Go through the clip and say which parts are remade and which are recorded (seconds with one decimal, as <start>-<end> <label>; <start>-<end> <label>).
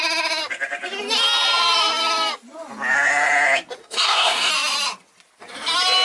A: 0.0-3.8 recorded; 3.8-4.5 remade; 4.5-6.0 recorded